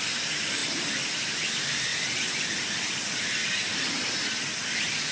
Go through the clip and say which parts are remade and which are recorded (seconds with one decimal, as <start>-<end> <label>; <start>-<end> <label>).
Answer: 0.0-0.6 recorded; 0.6-1.2 remade; 1.2-3.4 recorded; 3.4-5.1 remade